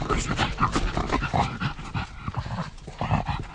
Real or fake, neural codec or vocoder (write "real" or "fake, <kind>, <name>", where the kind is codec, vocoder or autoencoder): real